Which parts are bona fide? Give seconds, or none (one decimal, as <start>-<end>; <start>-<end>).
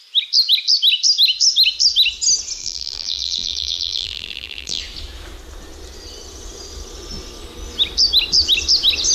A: 0.0-2.6; 4.8-9.1